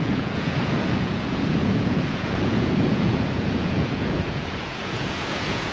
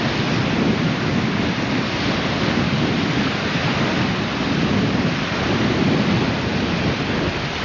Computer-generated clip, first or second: first